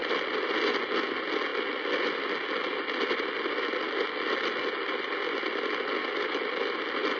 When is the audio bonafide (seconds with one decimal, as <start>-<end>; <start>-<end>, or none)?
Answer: 0.0-7.2